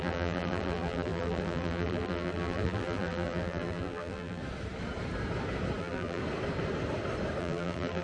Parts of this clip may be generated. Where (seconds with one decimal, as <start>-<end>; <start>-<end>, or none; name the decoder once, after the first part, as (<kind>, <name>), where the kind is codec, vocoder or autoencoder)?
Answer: 0.0-4.4 (vocoder, BigVGAN v2); 5.8-6.2; 7.4-8.0